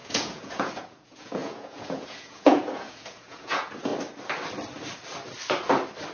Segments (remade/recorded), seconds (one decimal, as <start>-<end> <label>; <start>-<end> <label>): 0.0-3.9 remade; 3.9-6.1 recorded